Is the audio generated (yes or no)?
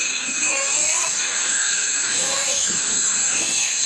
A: yes